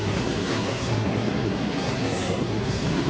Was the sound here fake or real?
fake